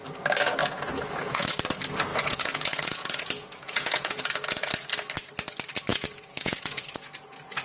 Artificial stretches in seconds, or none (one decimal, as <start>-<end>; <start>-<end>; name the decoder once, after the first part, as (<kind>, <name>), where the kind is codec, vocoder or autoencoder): 0.6-1.5 (vocoder, Vocos); 2.1-4.7; 5.9-7.6

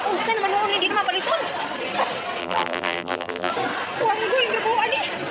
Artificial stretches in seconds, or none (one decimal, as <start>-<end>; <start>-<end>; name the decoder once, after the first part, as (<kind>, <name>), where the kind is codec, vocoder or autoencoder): 2.4-3.5 (vocoder, BigVGAN v2)